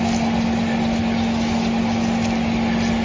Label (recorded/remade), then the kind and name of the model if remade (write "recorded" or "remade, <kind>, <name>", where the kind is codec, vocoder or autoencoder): recorded